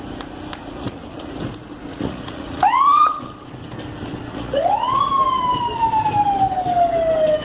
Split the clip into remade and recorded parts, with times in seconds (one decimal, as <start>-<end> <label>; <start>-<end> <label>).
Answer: 0.0-0.6 recorded; 0.6-1.3 remade; 1.3-1.9 recorded; 1.9-3.3 remade; 3.3-4.3 recorded; 4.3-5.1 remade; 5.1-7.4 recorded